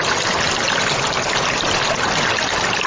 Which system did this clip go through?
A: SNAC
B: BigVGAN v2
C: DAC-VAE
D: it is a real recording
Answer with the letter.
D